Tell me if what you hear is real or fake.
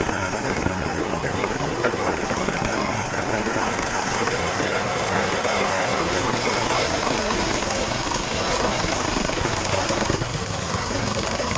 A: fake